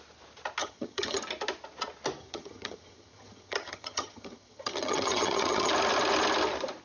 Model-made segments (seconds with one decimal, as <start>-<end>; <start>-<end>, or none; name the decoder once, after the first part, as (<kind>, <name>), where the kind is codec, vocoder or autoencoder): 0.6-1.2 (vocoder, HiFi-GAN); 2.2-5.7

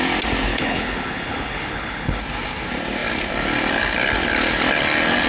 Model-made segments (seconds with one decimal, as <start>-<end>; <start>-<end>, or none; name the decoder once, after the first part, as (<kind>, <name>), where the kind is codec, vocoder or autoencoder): 0.5-2.2 (codec, HILCodec)

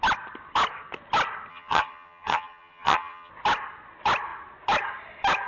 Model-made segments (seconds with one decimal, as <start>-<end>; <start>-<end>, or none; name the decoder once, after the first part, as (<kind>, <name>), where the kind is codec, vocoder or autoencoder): 1.5-3.3 (vocoder, HiFi-GAN)

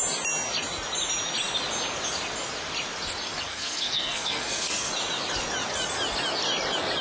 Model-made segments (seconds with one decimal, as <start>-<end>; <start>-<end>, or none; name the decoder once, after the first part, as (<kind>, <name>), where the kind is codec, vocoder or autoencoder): 3.5-4.9 (codec, SNAC)

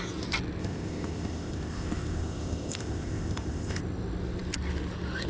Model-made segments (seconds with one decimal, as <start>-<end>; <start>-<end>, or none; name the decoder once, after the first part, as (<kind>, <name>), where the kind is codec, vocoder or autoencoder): 0.6-3.8 (codec, ZipCodec)